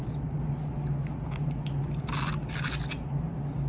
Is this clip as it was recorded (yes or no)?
yes